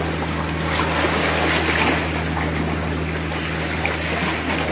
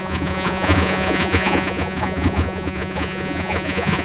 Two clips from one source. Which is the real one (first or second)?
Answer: first